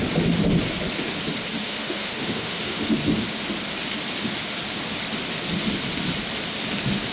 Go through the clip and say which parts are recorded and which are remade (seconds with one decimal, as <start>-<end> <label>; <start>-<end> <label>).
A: 0.0-1.6 recorded; 1.6-2.9 remade; 2.9-7.1 recorded

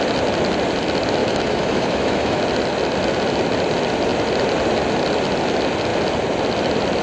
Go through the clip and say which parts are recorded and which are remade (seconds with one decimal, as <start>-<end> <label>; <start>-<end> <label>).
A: 0.0-1.2 recorded; 1.2-2.4 remade; 2.4-7.0 recorded

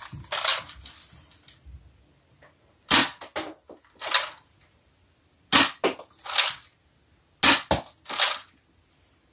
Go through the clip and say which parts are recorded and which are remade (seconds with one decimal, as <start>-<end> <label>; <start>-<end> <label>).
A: 0.0-9.3 recorded

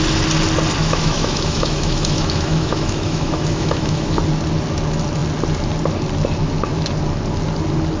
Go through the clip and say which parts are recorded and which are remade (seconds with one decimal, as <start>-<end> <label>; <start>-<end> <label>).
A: 0.0-0.8 recorded; 0.8-4.2 remade; 4.2-8.0 recorded